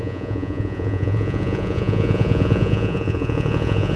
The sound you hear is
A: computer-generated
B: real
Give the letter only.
A